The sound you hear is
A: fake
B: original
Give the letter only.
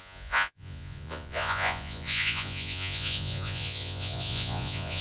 A